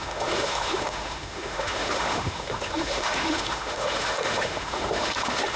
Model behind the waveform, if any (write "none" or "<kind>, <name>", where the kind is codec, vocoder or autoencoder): autoencoder, DAC-VAE